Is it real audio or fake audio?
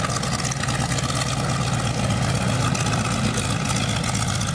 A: real